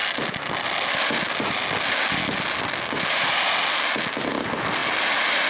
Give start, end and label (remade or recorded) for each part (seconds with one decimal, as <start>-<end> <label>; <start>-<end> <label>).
0.0-5.5 recorded